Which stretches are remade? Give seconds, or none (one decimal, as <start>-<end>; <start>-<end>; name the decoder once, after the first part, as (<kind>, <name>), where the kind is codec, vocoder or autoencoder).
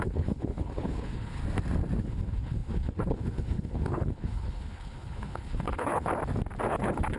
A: 0.0-1.4 (codec, HILCodec); 2.0-6.1; 6.7-7.2